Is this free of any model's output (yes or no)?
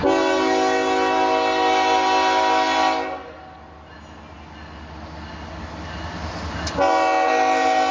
yes